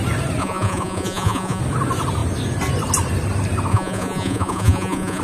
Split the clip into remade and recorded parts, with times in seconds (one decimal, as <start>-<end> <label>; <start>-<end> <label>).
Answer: 0.0-0.4 recorded; 0.4-1.6 remade; 1.6-3.7 recorded; 3.7-5.2 remade

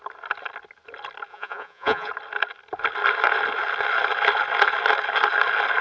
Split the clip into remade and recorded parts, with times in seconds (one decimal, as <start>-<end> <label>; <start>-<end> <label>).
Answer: 0.0-1.3 recorded; 1.3-2.1 remade; 2.1-5.8 recorded

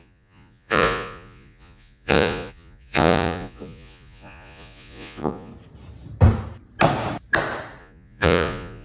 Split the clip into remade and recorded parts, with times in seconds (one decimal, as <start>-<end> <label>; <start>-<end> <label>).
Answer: 0.0-5.5 remade; 5.5-7.8 recorded; 7.8-8.8 remade

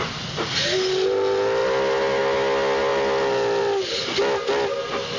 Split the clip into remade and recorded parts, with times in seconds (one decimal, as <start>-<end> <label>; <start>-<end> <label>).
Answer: 0.0-5.2 recorded

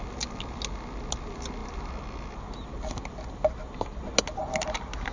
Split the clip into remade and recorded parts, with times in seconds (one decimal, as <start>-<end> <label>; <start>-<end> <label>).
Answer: 0.0-5.1 recorded

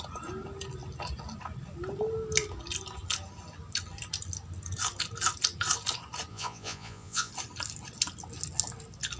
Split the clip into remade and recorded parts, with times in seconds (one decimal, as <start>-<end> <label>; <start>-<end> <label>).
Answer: 0.0-6.3 recorded; 6.3-7.3 remade; 7.3-9.2 recorded

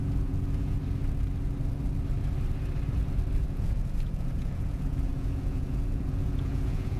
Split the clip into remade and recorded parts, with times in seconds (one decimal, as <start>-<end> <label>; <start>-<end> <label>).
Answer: 0.0-0.8 remade; 0.8-3.4 recorded; 3.4-7.0 remade

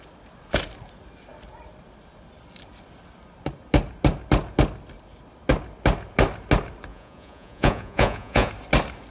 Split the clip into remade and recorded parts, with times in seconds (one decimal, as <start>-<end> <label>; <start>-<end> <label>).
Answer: 0.0-6.9 recorded; 6.9-8.5 remade; 8.5-9.1 recorded